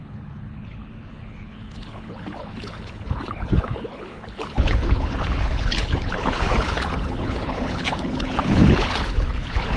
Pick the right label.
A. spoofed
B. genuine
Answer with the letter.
A